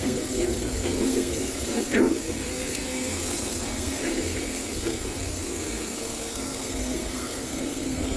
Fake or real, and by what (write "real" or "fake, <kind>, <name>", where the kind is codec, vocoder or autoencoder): fake, codec, SNAC